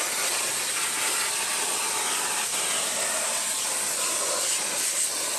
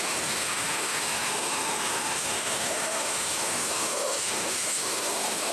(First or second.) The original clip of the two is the first